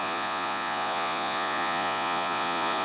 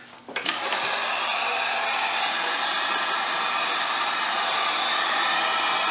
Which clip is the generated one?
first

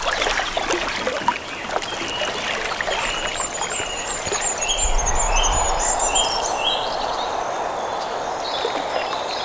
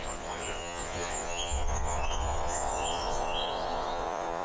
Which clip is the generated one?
second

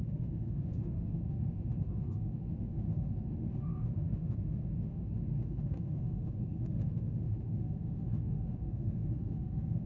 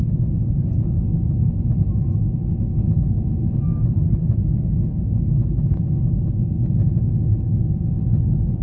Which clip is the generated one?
first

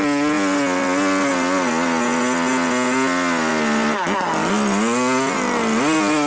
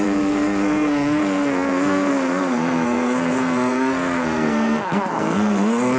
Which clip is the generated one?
second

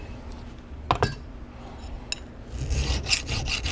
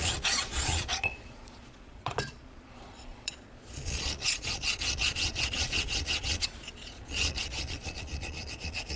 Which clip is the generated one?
second